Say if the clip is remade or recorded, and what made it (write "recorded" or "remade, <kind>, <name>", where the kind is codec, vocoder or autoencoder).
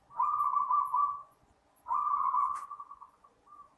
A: remade, vocoder, Vocos